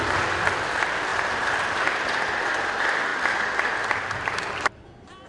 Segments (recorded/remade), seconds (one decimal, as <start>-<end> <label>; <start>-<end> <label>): 0.0-5.3 recorded

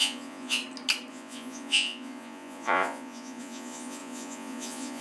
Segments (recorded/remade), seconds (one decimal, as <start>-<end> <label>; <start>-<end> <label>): 0.0-0.6 remade; 0.6-1.1 recorded; 1.1-5.0 remade

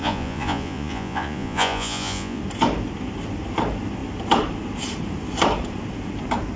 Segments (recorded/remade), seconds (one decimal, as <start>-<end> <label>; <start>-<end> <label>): 0.0-2.4 remade; 2.4-6.6 recorded

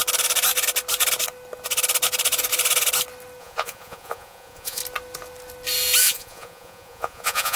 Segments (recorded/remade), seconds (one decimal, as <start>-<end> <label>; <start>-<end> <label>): 0.0-3.4 recorded; 3.4-4.8 remade; 4.8-6.0 recorded; 6.0-7.6 remade

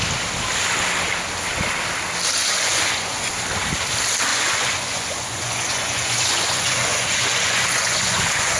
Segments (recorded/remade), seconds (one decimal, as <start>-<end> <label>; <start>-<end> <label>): 0.0-2.4 recorded; 2.4-3.3 remade; 3.3-4.3 recorded; 4.3-8.6 remade

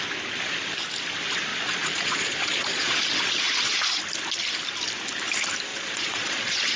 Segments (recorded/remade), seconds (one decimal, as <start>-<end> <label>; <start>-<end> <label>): 0.0-1.5 recorded; 1.5-4.0 remade; 4.0-5.7 recorded; 5.7-6.8 remade

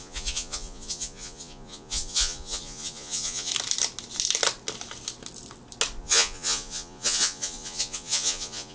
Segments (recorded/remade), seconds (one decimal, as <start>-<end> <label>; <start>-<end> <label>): 0.0-3.5 remade; 3.5-6.0 recorded; 6.0-8.7 remade